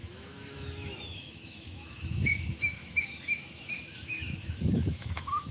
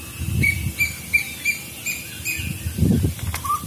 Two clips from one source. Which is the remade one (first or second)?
first